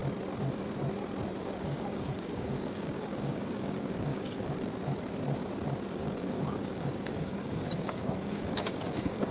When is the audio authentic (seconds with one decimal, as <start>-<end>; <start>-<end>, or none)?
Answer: 0.0-1.4; 4.7-5.9